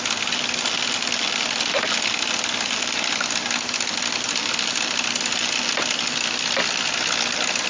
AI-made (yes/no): no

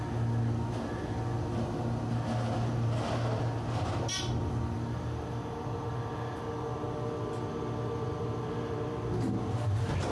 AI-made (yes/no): no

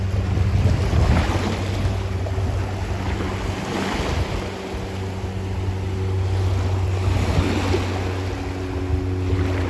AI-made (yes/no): no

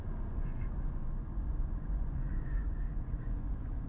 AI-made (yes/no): yes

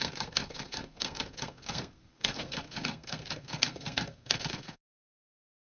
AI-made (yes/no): yes